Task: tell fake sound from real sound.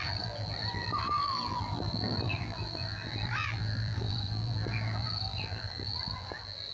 fake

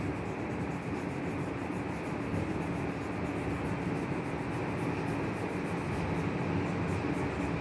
real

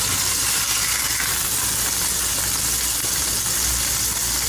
real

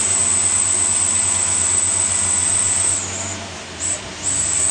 real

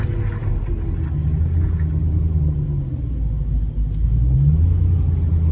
real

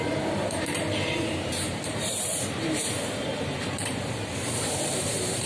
fake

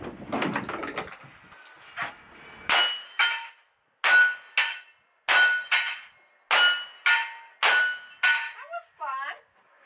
real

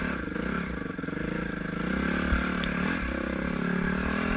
real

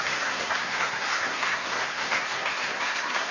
fake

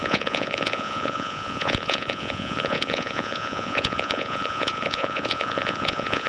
fake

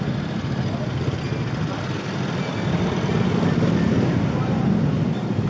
real